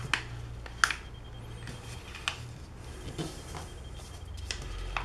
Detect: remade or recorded recorded